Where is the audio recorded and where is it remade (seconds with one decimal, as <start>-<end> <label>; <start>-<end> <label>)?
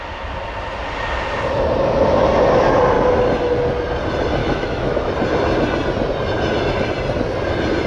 0.0-4.4 recorded; 4.4-5.1 remade; 5.1-7.9 recorded